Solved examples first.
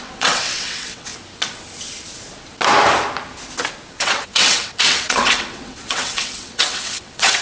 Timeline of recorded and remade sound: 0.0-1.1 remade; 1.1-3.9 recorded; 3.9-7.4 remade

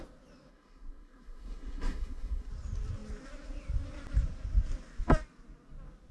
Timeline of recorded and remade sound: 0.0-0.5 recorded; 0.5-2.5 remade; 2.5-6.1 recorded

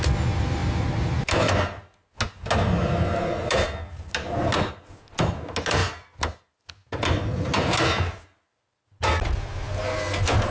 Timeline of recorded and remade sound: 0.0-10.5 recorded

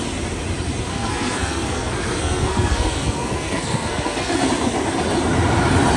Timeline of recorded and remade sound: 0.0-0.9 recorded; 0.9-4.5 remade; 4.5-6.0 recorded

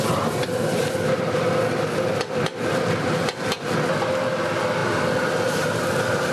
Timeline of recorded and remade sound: 0.0-6.3 recorded